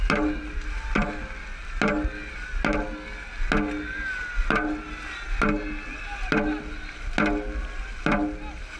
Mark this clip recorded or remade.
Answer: recorded